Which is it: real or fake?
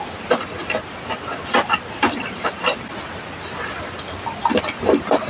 real